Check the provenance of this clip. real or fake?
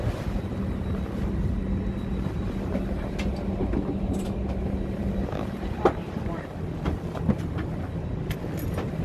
real